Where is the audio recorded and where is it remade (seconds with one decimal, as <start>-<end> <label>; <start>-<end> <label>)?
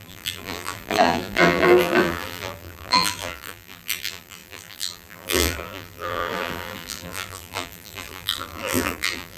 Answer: 0.0-9.4 remade